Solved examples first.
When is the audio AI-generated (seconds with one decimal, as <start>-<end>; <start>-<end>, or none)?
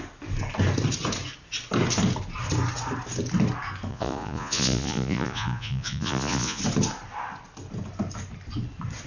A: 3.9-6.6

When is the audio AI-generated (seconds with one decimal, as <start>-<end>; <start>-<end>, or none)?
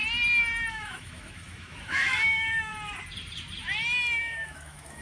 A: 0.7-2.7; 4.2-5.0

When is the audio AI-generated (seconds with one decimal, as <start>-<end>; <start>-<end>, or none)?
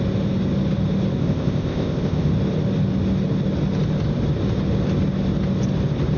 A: 1.2-2.3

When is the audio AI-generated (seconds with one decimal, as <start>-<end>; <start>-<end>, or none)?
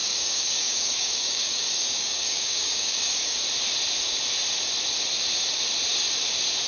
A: 0.0-3.4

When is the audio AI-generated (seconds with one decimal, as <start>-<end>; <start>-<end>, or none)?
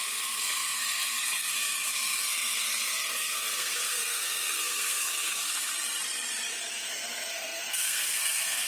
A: 0.0-5.7; 6.5-8.7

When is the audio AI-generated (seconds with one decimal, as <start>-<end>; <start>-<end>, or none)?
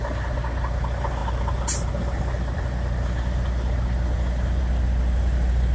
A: none